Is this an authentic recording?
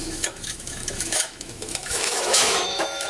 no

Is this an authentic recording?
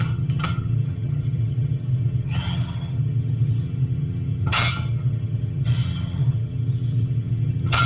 no